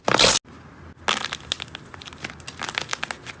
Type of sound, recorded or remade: recorded